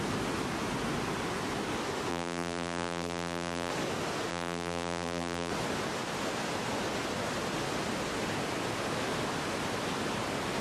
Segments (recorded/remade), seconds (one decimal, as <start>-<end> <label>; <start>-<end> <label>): 0.0-2.1 recorded; 2.1-3.7 remade; 3.7-4.3 recorded; 4.3-5.5 remade; 5.5-10.6 recorded

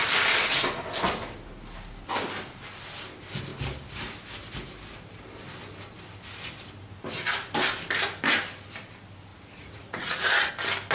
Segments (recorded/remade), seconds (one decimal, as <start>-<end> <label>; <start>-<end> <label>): 0.0-9.3 recorded; 9.3-10.5 remade; 10.5-10.9 recorded

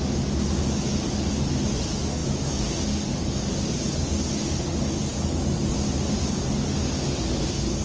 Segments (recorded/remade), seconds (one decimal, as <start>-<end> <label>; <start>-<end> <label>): 0.0-2.2 recorded; 2.2-2.9 remade; 2.9-7.8 recorded

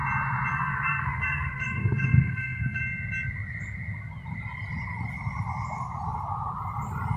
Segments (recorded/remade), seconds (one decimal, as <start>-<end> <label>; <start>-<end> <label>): 0.0-0.5 recorded; 0.5-2.8 remade; 2.8-7.2 recorded

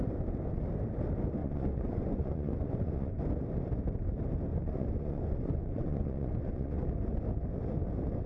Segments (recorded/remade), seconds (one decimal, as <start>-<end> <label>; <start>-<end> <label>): 0.0-1.4 recorded; 1.4-3.2 remade; 3.2-4.5 recorded; 4.5-6.9 remade; 6.9-8.3 recorded

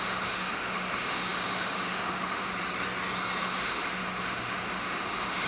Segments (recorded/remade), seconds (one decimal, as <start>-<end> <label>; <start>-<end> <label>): 0.0-2.5 remade; 2.5-3.5 recorded; 3.5-5.5 remade